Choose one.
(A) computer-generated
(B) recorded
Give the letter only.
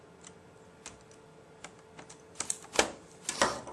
B